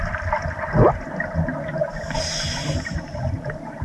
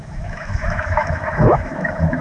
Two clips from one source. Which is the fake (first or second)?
second